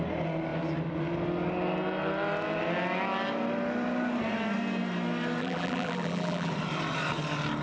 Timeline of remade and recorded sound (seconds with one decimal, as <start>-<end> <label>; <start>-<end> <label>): 0.0-5.4 recorded; 5.4-6.5 remade; 6.5-7.6 recorded